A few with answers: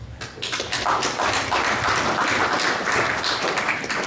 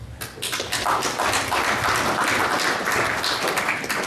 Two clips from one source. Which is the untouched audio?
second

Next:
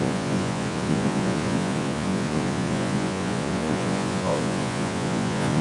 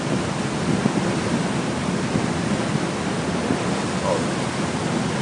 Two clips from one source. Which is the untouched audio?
second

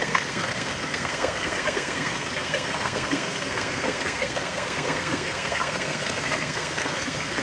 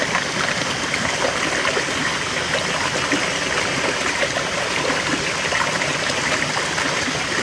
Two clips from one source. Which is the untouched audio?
second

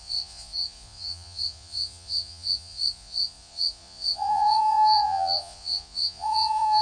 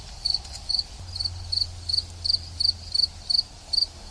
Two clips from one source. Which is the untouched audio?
second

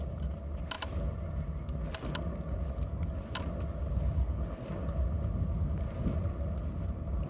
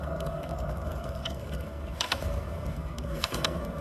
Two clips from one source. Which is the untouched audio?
first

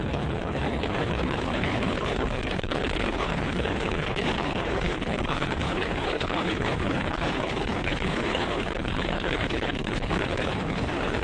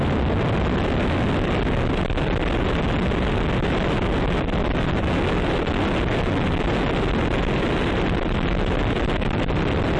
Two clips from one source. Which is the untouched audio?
second